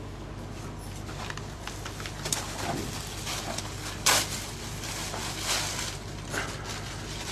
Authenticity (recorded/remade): recorded